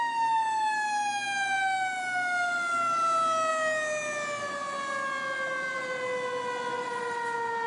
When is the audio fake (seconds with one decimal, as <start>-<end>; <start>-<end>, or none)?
none